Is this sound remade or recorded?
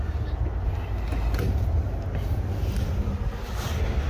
recorded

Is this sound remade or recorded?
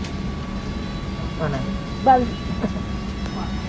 recorded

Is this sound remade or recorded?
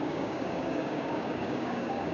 remade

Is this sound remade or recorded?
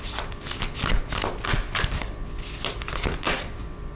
recorded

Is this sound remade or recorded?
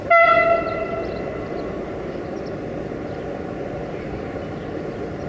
recorded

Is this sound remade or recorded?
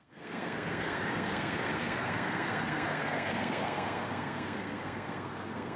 remade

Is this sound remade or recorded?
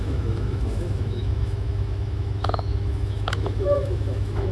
remade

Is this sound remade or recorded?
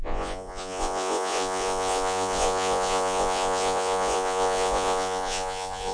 remade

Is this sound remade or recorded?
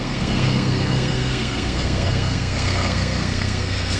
remade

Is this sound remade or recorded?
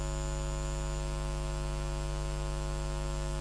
recorded